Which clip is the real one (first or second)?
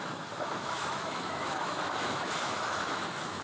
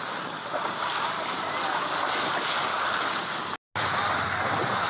second